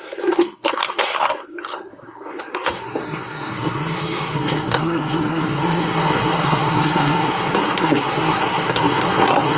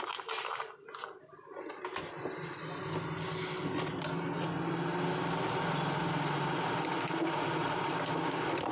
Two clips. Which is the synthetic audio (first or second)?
first